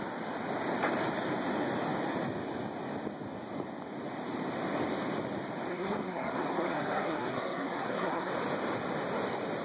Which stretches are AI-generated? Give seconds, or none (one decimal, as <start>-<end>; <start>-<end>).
5.7-8.3